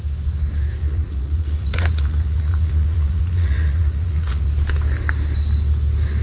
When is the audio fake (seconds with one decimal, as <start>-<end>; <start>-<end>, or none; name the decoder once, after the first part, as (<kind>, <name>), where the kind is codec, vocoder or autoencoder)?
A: 0.8-4.5 (vocoder, Vocos)